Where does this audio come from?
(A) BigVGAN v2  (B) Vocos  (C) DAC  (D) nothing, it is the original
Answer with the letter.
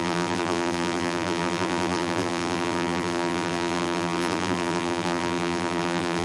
A